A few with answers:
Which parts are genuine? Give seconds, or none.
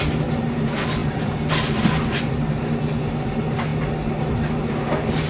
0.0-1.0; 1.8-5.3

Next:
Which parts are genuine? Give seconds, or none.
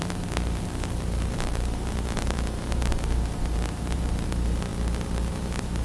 4.7-5.3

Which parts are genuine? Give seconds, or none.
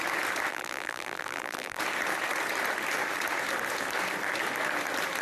0.0-0.5; 1.8-5.2